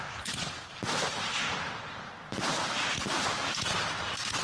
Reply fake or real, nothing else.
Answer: real